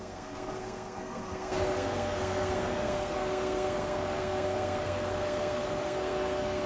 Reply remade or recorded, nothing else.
remade